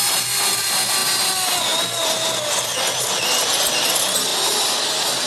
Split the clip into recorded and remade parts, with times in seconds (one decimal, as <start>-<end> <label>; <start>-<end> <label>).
0.0-5.3 recorded